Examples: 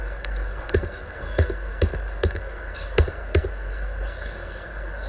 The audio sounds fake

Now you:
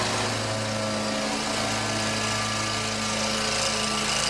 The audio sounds real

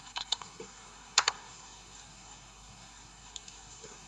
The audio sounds fake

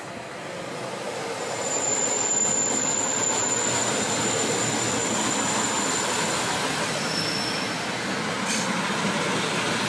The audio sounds real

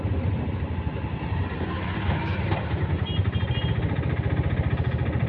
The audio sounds real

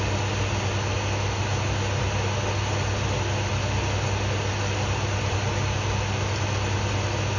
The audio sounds real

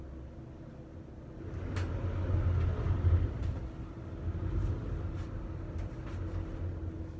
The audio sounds real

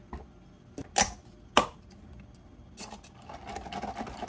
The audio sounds real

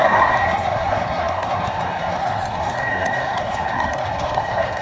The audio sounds fake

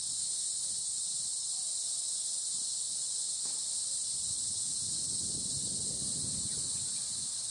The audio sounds real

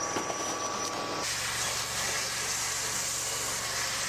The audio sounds real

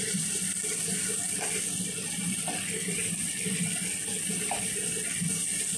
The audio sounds real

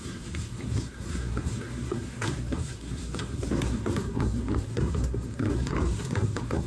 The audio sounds fake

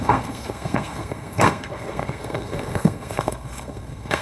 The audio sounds fake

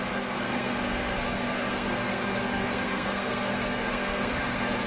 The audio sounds fake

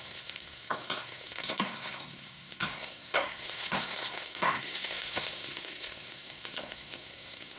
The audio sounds fake